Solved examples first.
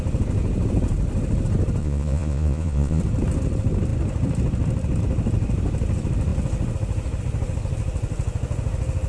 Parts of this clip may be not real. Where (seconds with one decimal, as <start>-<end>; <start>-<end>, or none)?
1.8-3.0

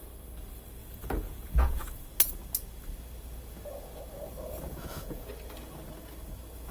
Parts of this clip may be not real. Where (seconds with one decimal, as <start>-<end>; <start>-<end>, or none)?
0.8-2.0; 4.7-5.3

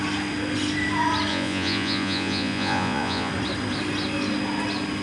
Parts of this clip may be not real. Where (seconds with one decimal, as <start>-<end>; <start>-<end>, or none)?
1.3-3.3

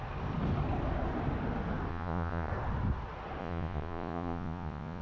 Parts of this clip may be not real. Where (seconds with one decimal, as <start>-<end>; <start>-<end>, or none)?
1.9-2.5; 3.4-5.0